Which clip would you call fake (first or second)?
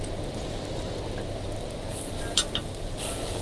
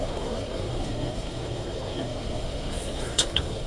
second